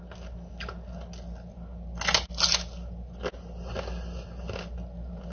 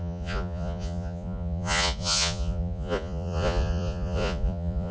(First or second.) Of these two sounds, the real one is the first